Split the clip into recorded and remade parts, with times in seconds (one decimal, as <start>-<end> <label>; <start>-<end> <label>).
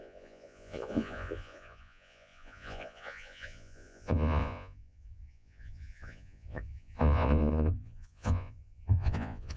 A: 0.0-9.6 remade